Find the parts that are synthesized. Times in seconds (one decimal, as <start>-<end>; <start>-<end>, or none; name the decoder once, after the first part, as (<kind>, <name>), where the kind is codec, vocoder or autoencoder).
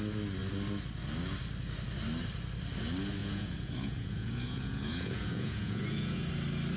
3.2-6.3 (vocoder, Vocos)